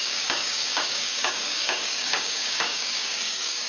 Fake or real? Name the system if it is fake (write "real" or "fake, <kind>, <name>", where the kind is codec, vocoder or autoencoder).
fake, codec, DAC